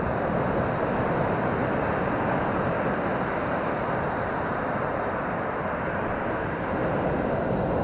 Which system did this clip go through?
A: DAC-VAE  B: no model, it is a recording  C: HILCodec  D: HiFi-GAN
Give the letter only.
B